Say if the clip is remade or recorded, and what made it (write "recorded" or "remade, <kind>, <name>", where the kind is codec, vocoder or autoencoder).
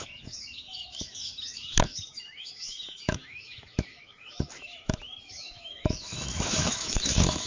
remade, autoencoder, DAC-VAE